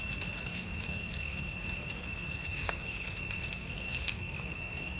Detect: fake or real fake